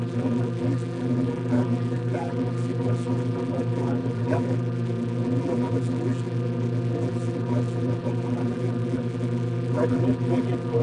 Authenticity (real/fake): fake